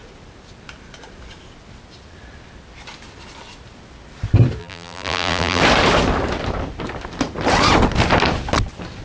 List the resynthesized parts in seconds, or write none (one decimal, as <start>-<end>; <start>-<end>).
4.6-5.6